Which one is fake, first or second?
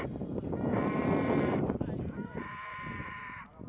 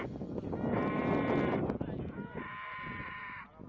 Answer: first